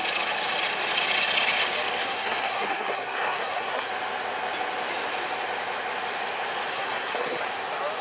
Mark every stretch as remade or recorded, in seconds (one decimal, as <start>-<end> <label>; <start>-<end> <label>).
0.0-2.0 recorded; 2.0-3.9 remade; 3.9-6.7 recorded; 6.7-7.4 remade; 7.4-8.0 recorded